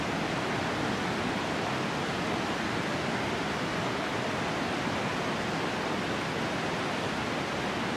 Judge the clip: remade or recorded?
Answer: recorded